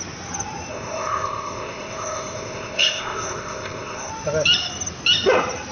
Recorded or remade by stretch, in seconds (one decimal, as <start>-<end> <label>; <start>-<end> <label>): 0.0-0.7 recorded; 0.7-4.1 remade; 4.1-5.7 recorded